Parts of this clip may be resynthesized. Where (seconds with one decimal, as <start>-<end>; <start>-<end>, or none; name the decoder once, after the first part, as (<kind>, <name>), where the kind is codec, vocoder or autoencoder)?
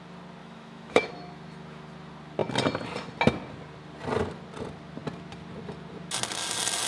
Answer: 0.4-1.1 (autoencoder, DAC-VAE)